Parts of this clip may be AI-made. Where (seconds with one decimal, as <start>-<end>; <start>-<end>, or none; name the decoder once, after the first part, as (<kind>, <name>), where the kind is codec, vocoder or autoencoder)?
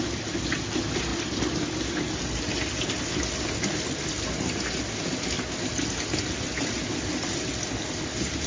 none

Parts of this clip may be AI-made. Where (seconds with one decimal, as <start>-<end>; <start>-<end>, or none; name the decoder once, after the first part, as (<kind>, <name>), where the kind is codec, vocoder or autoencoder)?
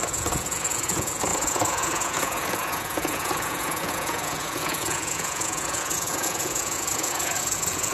0.0-7.9 (vocoder, Vocos)